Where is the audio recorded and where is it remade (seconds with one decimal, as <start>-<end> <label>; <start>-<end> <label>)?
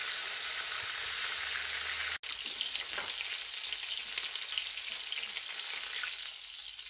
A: 0.0-6.9 recorded